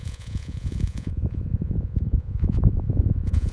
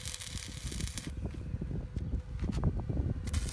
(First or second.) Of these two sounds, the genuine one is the second